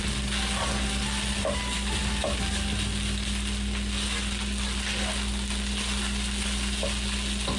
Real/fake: real